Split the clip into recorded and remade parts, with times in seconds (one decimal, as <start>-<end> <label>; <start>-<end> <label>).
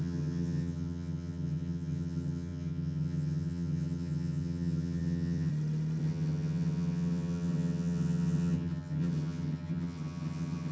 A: 0.0-5.5 remade; 5.5-6.0 recorded; 6.0-10.7 remade